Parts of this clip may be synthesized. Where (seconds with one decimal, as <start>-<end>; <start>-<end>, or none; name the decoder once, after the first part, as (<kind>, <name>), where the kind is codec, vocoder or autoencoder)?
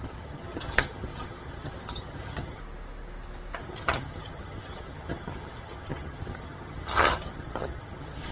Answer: 0.0-2.6 (vocoder, HiFi-GAN); 3.6-8.3